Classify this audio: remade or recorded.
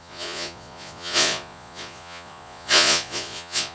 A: remade